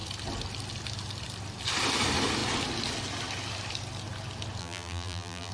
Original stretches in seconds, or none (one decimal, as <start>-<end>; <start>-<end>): 0.0-4.6